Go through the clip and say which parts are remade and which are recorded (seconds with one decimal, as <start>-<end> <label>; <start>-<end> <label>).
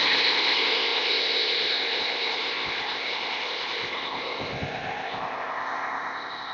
0.0-6.5 remade